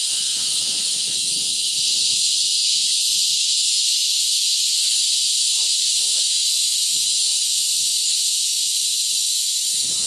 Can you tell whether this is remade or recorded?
remade